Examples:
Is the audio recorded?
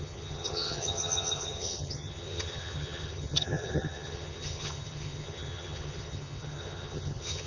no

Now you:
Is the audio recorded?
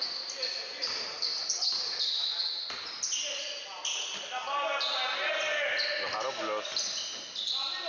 yes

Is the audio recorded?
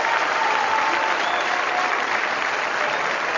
yes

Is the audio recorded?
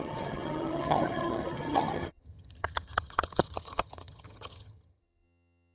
no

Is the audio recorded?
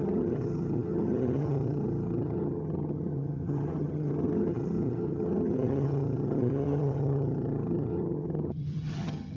no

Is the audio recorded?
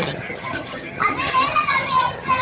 no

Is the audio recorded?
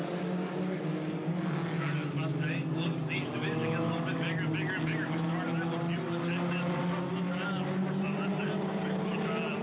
yes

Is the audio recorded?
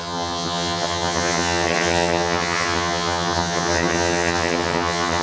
no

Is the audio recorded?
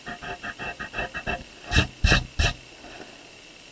yes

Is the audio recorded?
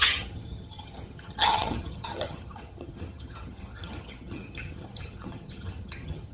no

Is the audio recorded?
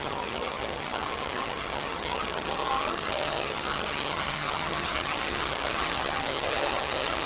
no